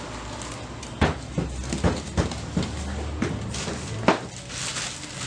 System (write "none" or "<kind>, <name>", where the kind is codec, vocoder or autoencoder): none